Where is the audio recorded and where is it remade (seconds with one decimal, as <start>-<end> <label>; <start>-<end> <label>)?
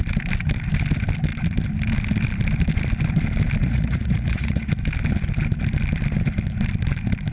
0.0-3.6 recorded; 3.6-4.7 remade; 4.7-7.3 recorded